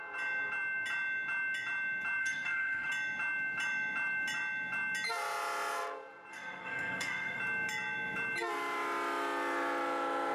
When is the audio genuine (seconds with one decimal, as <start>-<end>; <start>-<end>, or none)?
0.0-2.2; 2.9-6.3; 7.4-10.3